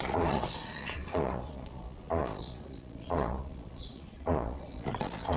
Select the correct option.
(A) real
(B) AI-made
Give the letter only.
B